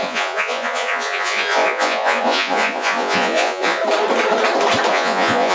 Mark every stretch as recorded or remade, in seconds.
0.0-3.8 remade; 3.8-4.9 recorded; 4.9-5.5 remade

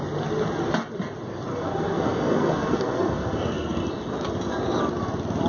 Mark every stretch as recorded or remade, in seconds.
0.0-1.5 recorded; 1.5-3.8 remade; 3.8-5.5 recorded